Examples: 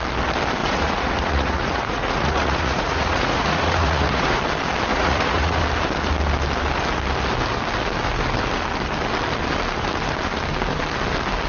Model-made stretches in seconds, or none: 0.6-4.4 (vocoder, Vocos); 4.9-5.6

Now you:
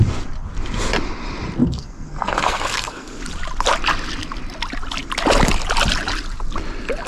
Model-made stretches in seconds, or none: 1.6-3.2 (codec, SNAC)

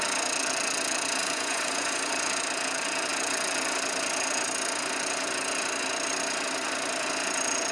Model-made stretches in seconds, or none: 1.2-2.1 (vocoder, Vocos)